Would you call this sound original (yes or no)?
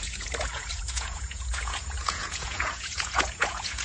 no